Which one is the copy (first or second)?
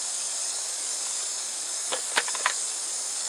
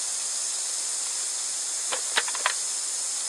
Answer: first